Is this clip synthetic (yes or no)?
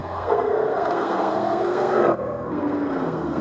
yes